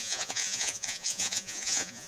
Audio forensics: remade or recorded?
remade